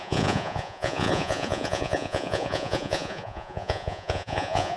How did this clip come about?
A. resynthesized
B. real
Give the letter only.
A